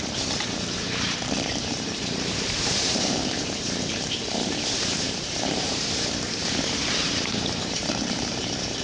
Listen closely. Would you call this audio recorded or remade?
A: remade